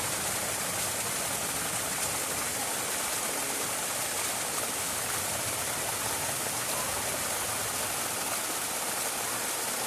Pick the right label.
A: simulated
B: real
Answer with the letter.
B